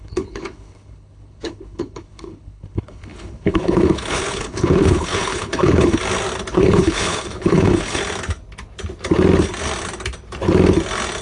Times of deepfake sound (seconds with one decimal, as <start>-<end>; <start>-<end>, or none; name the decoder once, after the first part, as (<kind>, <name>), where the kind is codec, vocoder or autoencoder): 0.0-6.0 (codec, HILCodec); 6.5-8.0